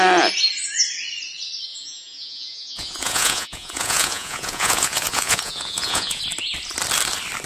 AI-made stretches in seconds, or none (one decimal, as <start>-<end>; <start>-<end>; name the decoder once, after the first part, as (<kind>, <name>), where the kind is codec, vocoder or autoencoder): 1.7-6.2 (vocoder, Vocos)